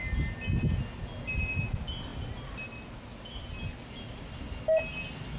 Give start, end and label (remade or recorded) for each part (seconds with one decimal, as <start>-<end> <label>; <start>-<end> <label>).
0.0-5.4 recorded